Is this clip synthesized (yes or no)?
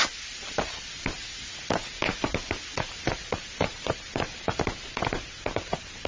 no